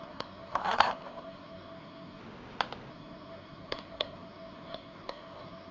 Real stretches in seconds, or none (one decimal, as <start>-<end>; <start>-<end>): 2.2-2.9